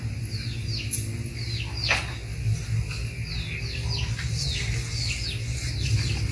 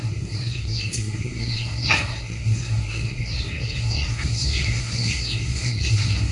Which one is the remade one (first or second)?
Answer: second